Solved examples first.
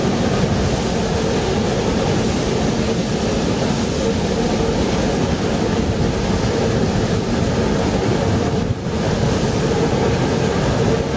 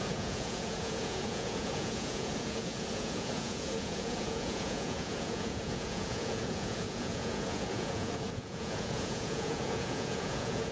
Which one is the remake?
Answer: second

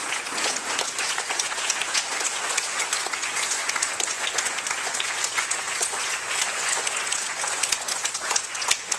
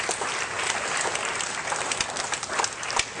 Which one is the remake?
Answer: first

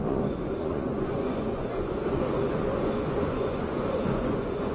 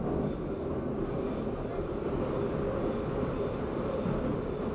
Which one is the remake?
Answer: first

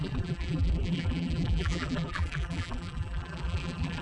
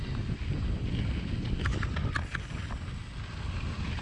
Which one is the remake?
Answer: first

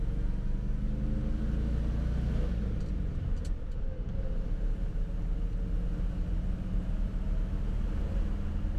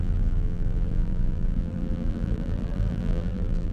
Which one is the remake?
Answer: second